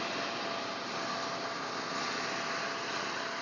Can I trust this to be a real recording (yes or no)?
yes